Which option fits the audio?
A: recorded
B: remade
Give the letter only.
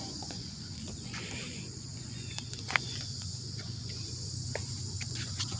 B